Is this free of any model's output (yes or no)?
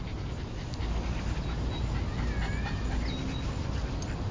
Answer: yes